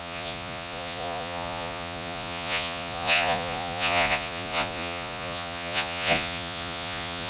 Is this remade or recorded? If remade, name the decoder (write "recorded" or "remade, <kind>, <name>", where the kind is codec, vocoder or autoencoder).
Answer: remade, vocoder, Vocos